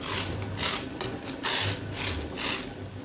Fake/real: real